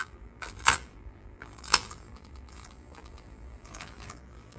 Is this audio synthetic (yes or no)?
yes